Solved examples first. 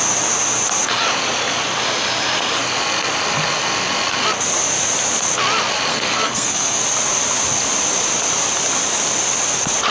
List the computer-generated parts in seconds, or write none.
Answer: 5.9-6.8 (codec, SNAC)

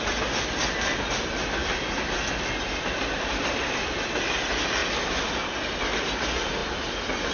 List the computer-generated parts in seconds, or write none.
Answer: 1.6-4.0 (vocoder, BigVGAN v2)

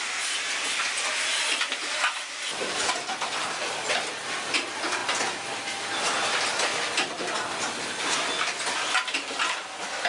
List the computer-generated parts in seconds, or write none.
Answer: 1.7-4.2 (vocoder, BigVGAN v2)

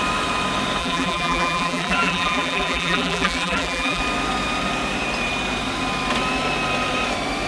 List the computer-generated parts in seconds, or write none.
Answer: 0.8-4.0 (vocoder, BigVGAN v2)

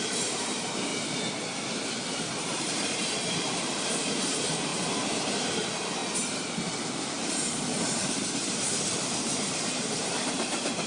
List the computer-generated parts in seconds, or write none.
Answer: 0.0-0.9 (vocoder, BigVGAN v2); 2.3-4.7; 5.3-10.9

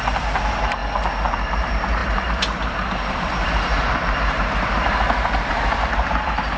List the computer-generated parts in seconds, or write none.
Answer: 0.0-0.8 (vocoder, BigVGAN v2); 1.3-6.6